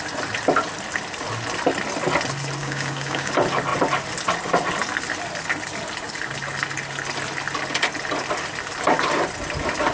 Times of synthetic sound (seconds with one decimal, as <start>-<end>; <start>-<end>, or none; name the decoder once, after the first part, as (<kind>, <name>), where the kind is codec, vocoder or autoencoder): 2.6-3.3 (codec, DAC)